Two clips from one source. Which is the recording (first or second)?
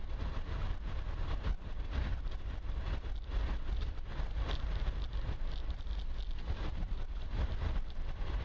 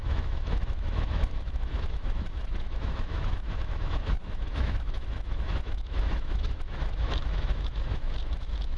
first